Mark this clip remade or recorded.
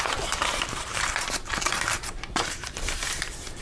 remade